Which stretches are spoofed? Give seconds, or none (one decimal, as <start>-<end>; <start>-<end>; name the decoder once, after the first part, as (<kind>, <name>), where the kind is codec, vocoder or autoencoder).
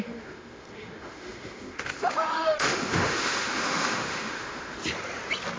0.0-4.8 (autoencoder, DAC-VAE)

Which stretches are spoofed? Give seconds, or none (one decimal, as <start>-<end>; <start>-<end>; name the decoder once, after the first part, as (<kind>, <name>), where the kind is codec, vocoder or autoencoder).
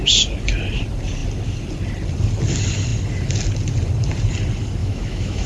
4.8-5.5 (autoencoder, DAC-VAE)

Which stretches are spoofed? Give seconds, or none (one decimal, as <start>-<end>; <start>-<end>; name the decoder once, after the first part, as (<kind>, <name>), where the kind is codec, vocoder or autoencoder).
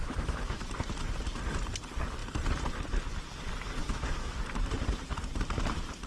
0.0-0.7 (autoencoder, DAC-VAE); 3.8-4.4